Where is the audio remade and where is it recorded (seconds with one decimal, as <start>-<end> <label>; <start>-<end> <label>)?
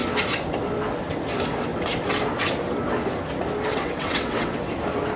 0.0-3.7 recorded; 3.7-4.6 remade; 4.6-5.2 recorded